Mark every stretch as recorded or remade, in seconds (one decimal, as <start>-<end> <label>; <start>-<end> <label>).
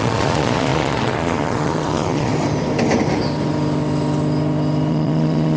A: 0.0-2.3 remade; 2.3-4.9 recorded; 4.9-5.6 remade